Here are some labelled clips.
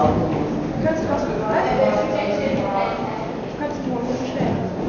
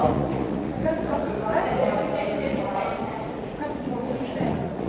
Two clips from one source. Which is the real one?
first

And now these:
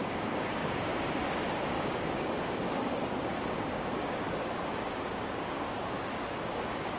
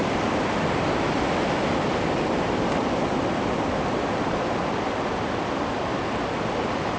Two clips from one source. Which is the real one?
second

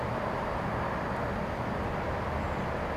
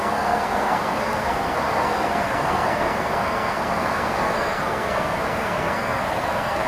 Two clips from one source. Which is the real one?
first